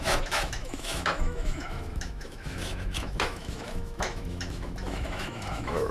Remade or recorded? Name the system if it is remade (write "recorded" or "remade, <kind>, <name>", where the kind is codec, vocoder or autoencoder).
remade, autoencoder, DAC-VAE